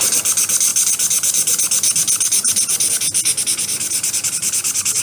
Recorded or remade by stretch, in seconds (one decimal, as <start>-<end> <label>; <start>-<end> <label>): 0.0-5.0 recorded